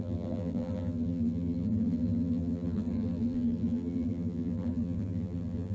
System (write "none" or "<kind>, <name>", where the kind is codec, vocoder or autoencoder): vocoder, BigVGAN v2